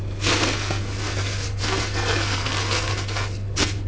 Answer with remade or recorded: remade